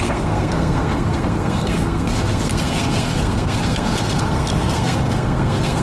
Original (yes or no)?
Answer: no